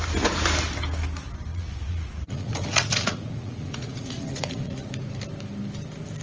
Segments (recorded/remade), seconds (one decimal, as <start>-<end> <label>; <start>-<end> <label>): 0.0-1.5 recorded; 1.5-4.9 remade; 4.9-6.2 recorded